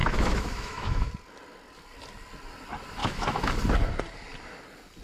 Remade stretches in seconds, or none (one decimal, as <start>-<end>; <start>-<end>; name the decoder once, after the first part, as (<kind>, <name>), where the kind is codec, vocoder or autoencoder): 0.0-1.1 (autoencoder, DAC-VAE); 3.0-3.5